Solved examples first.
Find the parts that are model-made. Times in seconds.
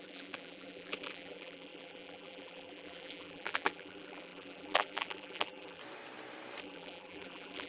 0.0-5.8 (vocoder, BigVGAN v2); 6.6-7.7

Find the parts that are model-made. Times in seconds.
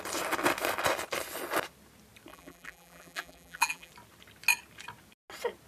2.3-3.9 (vocoder, BigVGAN v2)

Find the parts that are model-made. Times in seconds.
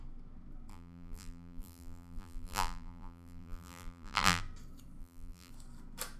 0.7-4.4 (vocoder, BigVGAN v2); 5.0-5.5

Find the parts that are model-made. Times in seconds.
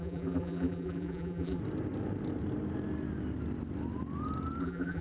0.0-1.6 (vocoder, BigVGAN v2); 4.6-5.0